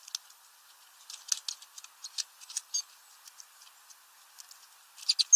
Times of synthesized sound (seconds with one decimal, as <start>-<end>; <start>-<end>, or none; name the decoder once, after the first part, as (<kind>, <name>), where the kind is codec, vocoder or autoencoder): none